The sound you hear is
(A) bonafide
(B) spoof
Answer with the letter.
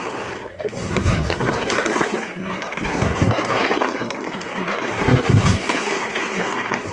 B